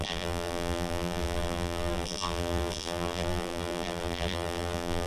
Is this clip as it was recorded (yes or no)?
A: no